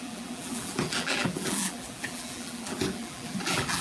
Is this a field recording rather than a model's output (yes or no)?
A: no